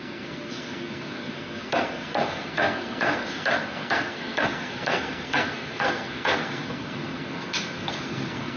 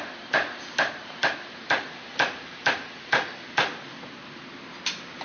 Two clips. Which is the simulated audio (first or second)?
first